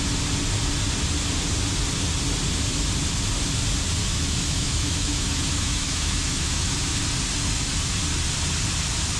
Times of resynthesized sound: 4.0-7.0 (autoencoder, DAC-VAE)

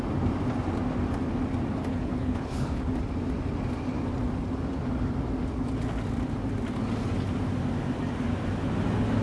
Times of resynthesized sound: 1.9-2.8 (codec, HILCodec)

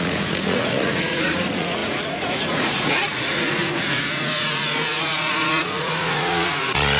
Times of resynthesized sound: 0.0-7.0 (vocoder, Vocos)

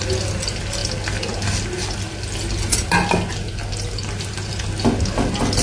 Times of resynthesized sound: none

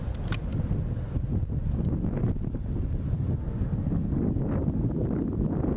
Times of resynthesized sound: none

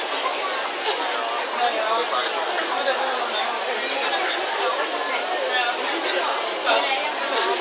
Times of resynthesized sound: none

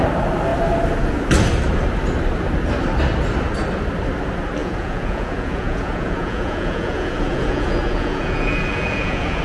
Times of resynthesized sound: 4.6-9.4 (vocoder, Vocos)

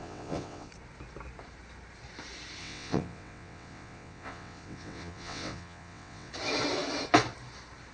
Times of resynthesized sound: 0.0-0.7 (vocoder, WaveNeXt); 2.6-6.3